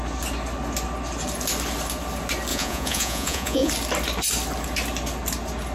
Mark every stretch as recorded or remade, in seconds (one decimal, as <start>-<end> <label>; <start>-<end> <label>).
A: 0.0-2.5 recorded; 2.5-3.7 remade; 3.7-5.7 recorded